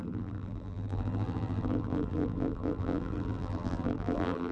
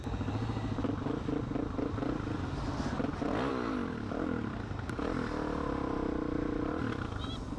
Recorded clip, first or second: second